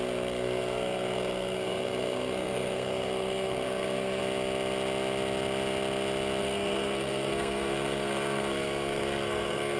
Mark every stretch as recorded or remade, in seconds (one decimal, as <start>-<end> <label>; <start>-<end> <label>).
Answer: 0.0-4.2 remade; 4.2-6.4 recorded; 6.4-9.8 remade